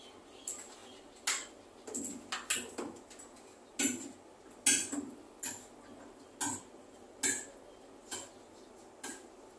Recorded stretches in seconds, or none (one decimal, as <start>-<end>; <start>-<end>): 0.0-9.6

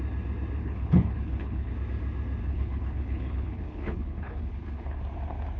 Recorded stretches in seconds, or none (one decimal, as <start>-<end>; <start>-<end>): 0.0-0.6; 1.7-2.4; 5.0-5.6